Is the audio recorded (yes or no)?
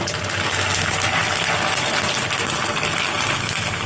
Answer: yes